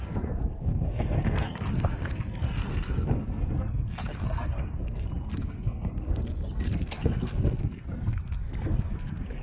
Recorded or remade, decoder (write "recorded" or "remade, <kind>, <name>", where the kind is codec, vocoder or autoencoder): remade, codec, SNAC